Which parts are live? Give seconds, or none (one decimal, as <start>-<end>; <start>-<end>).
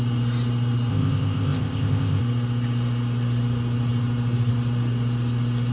0.0-0.9; 2.2-5.7